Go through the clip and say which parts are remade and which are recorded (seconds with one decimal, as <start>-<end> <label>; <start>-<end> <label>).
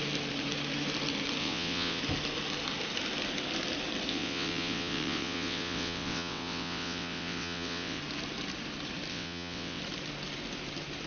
0.0-1.4 recorded; 1.4-2.0 remade; 2.0-4.1 recorded; 4.1-8.0 remade; 8.0-9.1 recorded; 9.1-9.8 remade; 9.8-11.1 recorded